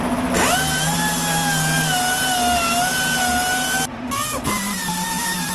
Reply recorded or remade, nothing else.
recorded